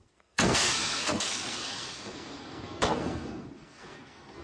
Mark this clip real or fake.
fake